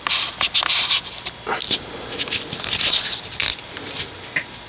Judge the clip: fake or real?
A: real